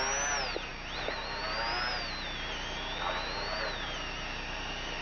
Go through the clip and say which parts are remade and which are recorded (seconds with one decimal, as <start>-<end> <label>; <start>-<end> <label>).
0.0-5.0 recorded